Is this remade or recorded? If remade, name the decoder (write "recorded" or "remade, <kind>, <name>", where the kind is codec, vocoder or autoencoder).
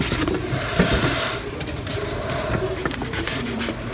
remade, vocoder, BigVGAN v2